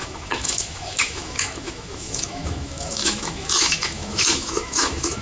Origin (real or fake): fake